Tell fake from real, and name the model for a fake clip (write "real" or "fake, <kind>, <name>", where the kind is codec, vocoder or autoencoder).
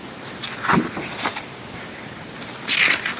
real